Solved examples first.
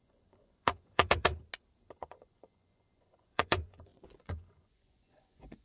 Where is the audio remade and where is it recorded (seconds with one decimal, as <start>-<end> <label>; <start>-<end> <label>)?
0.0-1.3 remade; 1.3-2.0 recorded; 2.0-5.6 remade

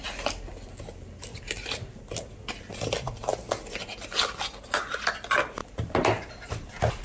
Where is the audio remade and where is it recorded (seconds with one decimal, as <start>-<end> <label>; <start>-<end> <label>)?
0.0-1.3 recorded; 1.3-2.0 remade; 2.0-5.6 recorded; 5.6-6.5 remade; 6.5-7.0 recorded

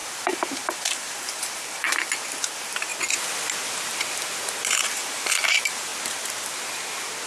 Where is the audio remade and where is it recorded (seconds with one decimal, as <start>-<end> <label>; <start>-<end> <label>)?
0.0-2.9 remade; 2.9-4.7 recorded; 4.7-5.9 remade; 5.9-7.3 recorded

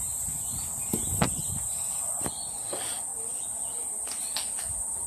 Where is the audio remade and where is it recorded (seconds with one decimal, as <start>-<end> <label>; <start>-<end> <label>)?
0.0-5.1 recorded